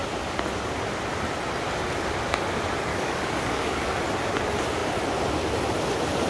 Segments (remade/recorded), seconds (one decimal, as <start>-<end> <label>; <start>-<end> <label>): 0.0-2.9 recorded; 2.9-4.0 remade; 4.0-6.3 recorded